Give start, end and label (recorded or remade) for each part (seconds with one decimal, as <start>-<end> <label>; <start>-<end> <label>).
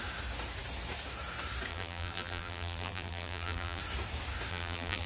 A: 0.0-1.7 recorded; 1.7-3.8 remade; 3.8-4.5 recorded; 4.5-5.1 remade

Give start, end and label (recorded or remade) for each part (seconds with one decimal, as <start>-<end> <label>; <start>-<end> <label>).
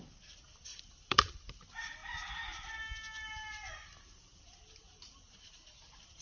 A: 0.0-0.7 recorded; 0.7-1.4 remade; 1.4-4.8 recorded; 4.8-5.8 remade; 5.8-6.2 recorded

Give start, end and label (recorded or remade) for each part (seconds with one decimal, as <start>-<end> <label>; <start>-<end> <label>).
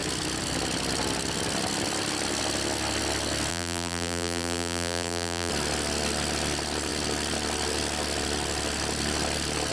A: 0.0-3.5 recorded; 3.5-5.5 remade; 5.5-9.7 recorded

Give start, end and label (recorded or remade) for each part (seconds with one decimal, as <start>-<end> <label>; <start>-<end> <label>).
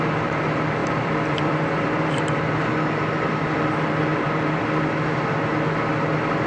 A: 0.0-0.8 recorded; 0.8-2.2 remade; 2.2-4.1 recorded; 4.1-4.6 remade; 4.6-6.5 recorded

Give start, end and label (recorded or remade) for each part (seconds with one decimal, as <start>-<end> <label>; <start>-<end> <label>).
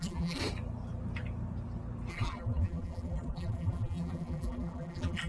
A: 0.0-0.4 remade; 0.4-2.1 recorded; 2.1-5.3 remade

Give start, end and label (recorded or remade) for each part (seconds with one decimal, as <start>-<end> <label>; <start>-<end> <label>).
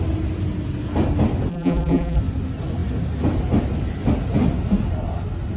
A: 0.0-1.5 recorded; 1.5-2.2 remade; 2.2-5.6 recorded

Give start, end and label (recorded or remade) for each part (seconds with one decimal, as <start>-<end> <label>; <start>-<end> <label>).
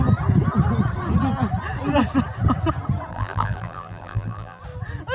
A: 0.0-3.1 recorded; 3.1-4.6 remade; 4.6-5.1 recorded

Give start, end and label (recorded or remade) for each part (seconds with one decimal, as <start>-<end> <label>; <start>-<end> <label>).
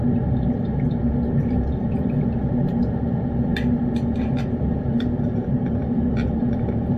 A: 0.0-3.5 remade; 3.5-4.2 recorded; 4.2-7.0 remade